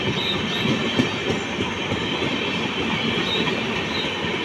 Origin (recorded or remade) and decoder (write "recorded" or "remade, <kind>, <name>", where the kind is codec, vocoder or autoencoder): recorded